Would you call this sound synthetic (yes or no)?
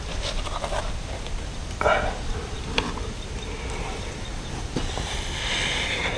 no